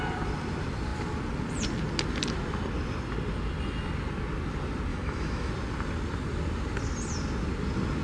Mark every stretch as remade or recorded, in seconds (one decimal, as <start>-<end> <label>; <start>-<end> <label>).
0.0-4.9 recorded; 4.9-5.5 remade; 5.5-8.0 recorded